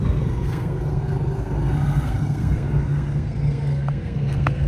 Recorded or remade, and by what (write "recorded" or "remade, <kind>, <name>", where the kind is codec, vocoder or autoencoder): remade, codec, SNAC